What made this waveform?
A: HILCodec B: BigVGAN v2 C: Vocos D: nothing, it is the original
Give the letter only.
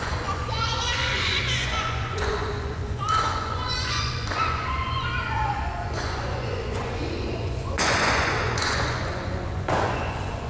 C